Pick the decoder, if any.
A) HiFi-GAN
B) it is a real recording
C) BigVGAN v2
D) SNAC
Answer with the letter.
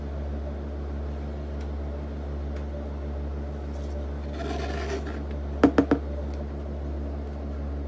B